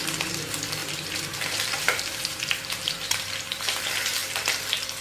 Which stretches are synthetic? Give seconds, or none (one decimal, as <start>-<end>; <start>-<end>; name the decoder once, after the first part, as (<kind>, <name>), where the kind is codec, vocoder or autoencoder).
0.8-3.8 (vocoder, BigVGAN v2)